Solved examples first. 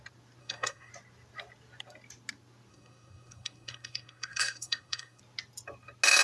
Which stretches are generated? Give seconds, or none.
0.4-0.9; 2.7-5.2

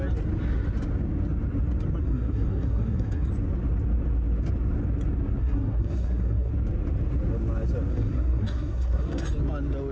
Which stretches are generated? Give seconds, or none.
2.0-3.3; 5.4-6.5; 7.9-9.2

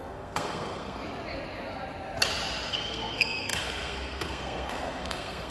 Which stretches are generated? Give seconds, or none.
0.0-1.0; 2.7-5.5